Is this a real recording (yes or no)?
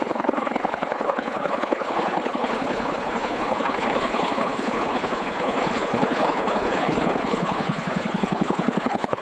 no